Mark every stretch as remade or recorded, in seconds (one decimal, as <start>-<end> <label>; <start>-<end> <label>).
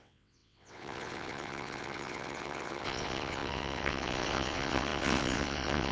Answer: 0.0-5.9 remade